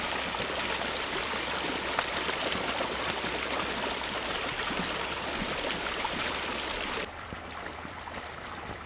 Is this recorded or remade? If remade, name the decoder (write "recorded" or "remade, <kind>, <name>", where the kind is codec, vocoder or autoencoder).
recorded